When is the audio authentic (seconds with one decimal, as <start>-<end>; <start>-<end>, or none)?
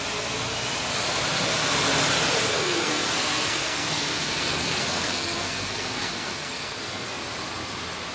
0.0-2.5; 7.2-8.1